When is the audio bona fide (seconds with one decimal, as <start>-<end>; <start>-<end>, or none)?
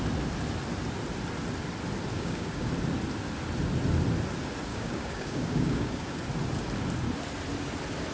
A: 0.0-2.1; 2.7-4.7; 6.2-8.1